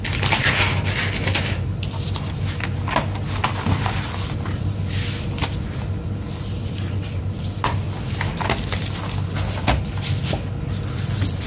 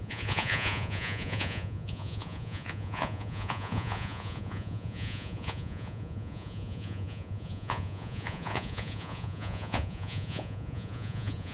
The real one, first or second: first